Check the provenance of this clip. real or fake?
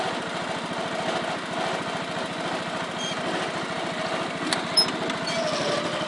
real